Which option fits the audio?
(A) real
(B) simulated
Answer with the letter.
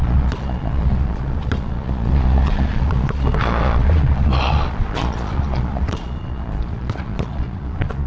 B